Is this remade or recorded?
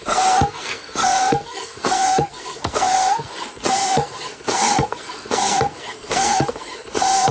remade